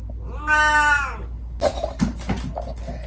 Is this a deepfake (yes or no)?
no